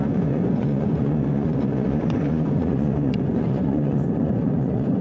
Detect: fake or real fake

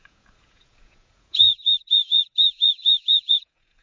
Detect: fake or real fake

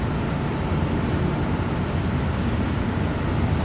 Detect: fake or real real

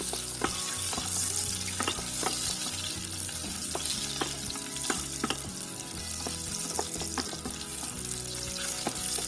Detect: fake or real real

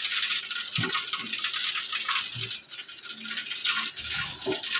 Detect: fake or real real